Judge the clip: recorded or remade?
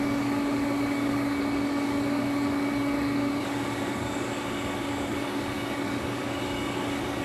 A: remade